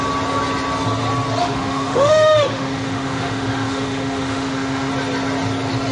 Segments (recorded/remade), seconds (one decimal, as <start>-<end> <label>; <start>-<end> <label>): 0.0-1.4 recorded; 1.4-4.9 remade; 4.9-5.9 recorded